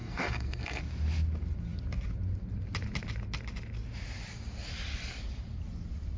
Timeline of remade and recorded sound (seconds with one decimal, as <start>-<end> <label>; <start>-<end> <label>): 0.0-0.8 remade; 0.8-6.2 recorded